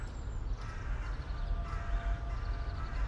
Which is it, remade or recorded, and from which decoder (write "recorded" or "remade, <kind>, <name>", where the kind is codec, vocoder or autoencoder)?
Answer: recorded